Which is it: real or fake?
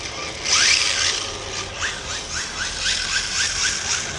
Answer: real